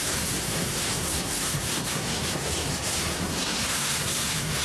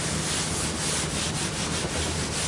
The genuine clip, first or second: second